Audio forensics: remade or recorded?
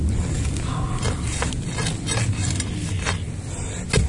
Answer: recorded